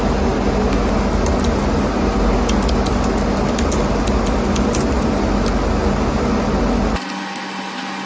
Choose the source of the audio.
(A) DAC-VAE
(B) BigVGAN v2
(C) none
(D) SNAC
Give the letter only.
C